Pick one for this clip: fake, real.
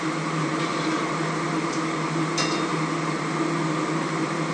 real